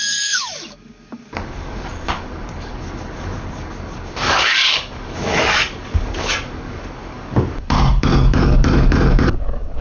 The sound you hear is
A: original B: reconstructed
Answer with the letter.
B